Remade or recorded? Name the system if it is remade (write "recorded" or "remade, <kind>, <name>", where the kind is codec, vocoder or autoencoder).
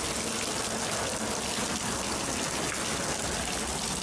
recorded